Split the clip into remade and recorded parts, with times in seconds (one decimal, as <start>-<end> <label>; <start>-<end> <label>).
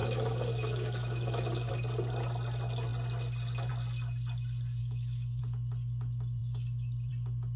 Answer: 0.0-1.7 remade; 1.7-4.8 recorded; 4.8-5.4 remade; 5.4-7.6 recorded